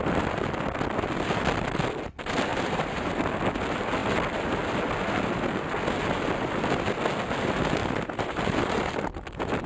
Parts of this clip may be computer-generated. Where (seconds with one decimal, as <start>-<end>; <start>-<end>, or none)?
2.5-3.1; 7.8-8.9